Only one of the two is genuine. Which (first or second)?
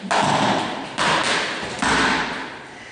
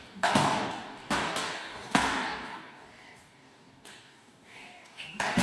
first